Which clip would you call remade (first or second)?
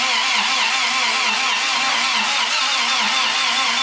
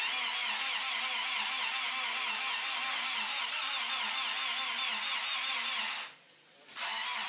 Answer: first